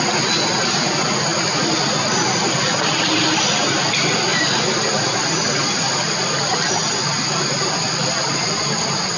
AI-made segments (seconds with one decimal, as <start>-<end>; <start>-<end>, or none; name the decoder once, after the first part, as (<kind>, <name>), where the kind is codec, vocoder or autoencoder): 1.3-2.9 (vocoder, BigVGAN v2); 4.3-8.6